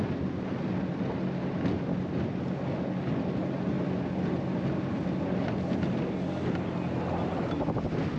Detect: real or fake real